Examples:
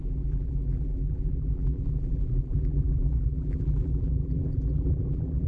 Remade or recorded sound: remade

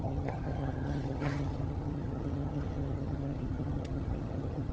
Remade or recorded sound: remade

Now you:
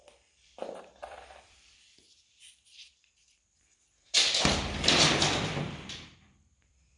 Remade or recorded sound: remade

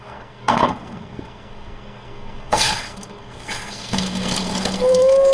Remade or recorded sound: remade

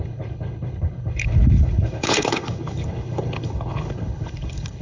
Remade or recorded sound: remade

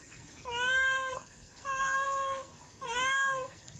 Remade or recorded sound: remade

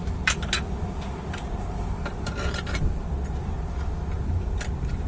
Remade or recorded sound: recorded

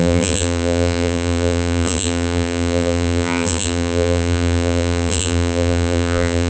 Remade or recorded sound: remade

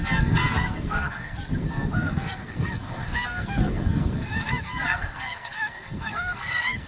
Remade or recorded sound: remade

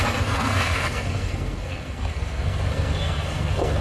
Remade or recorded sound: remade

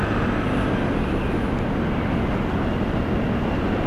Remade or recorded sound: recorded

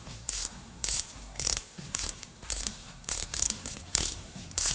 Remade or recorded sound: remade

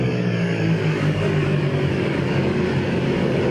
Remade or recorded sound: remade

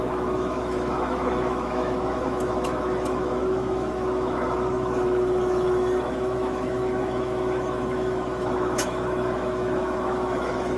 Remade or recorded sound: remade